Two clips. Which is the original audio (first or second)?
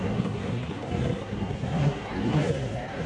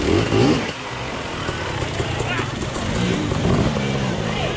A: second